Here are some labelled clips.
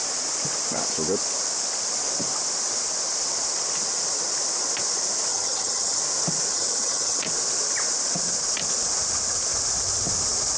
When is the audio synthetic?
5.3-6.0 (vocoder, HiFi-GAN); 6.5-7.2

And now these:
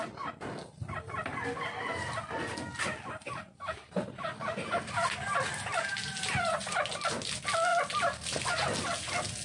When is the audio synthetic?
3.2-6.8 (vocoder, BigVGAN v2)

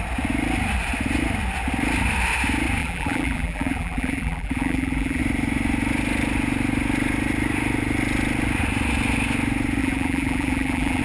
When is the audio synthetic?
2.8-5.2 (vocoder, BigVGAN v2); 9.8-11.0

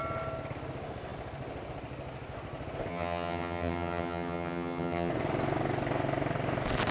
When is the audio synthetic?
2.9-5.1 (vocoder, HiFi-GAN)

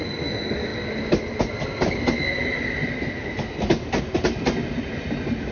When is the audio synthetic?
none